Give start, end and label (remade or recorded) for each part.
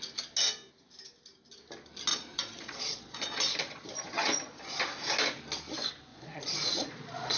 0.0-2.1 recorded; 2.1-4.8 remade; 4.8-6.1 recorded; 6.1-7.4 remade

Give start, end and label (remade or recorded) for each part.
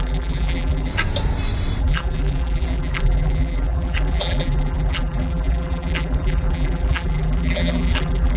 0.0-0.9 remade; 0.9-1.8 recorded; 1.8-8.4 remade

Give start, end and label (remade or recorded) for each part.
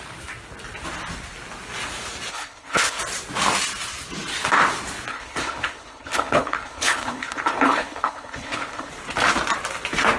0.0-2.3 recorded; 2.3-3.0 remade; 3.0-5.1 recorded; 5.1-8.9 remade; 8.9-10.2 recorded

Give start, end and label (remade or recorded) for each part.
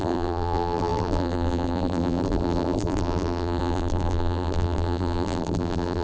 0.0-6.0 remade